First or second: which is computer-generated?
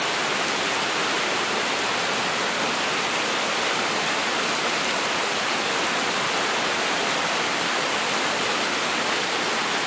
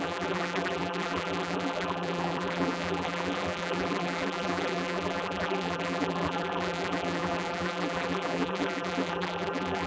second